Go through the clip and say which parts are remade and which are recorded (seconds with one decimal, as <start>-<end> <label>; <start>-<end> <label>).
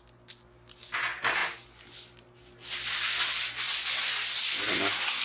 0.0-5.2 recorded